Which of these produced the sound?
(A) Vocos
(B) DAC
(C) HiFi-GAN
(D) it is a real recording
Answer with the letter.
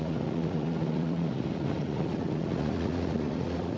A